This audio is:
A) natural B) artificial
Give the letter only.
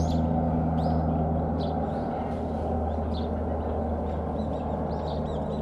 A